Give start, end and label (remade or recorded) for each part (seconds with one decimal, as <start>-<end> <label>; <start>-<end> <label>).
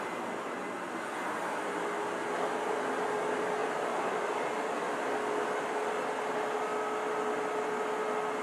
0.0-8.4 recorded